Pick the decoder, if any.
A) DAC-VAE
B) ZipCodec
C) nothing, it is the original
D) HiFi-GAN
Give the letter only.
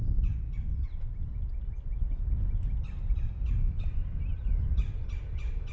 C